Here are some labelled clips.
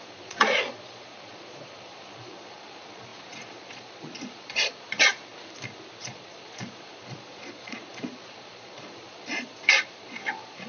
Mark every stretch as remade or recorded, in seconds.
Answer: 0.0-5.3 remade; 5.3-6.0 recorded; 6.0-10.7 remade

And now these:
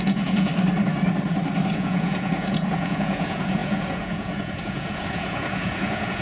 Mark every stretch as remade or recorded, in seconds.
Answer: 0.0-0.5 remade; 0.5-1.7 recorded; 1.7-6.2 remade

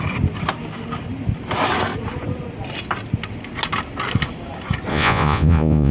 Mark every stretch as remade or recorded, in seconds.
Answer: 0.0-4.9 recorded; 4.9-5.9 remade

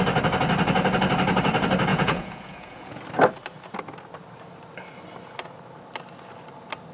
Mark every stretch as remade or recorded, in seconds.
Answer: 0.0-1.9 recorded; 1.9-3.0 remade; 3.0-6.9 recorded

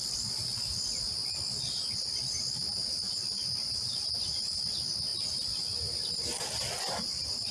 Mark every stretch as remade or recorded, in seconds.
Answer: 0.0-7.5 recorded

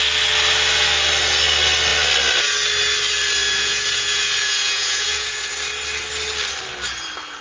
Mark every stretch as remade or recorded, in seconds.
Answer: 0.0-3.4 recorded; 3.4-5.5 remade; 5.5-7.4 recorded